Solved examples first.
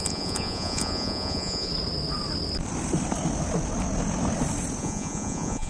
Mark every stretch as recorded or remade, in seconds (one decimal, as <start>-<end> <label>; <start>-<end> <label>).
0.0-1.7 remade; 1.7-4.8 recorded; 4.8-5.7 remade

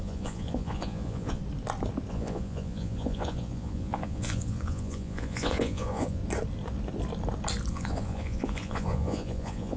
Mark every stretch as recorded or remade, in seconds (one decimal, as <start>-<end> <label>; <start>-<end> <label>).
0.0-1.4 remade; 1.4-2.1 recorded; 2.1-6.2 remade; 6.2-7.7 recorded; 7.7-9.8 remade

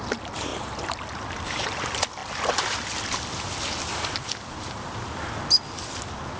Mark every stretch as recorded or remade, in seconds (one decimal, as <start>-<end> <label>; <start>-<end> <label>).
0.0-6.4 recorded

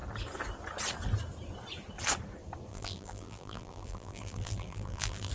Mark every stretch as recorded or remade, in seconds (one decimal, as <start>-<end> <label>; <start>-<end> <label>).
0.0-2.7 recorded; 2.7-5.3 remade

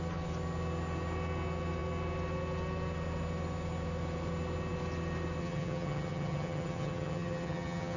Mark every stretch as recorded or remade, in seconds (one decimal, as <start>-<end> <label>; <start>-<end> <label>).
0.0-5.4 recorded; 5.4-8.0 remade